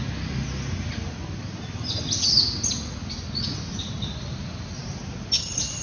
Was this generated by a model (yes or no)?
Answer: no